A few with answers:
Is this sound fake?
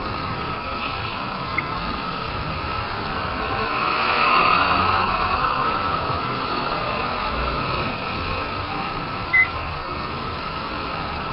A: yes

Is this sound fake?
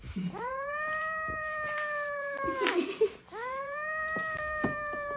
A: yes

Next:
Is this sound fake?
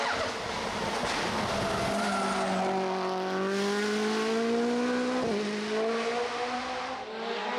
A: no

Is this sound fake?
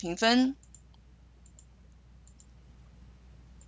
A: no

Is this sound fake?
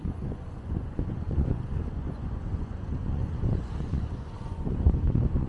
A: yes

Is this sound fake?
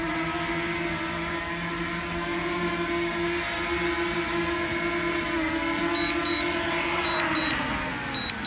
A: no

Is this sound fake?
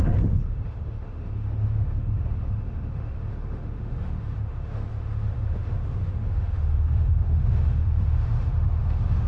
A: yes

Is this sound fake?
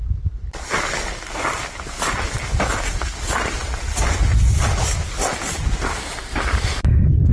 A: no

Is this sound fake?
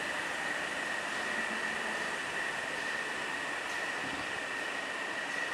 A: yes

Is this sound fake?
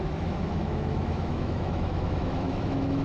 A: yes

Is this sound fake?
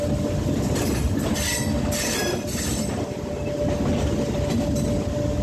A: no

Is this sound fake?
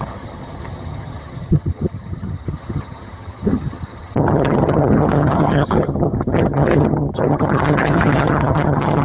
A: yes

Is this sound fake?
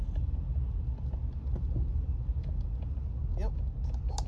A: no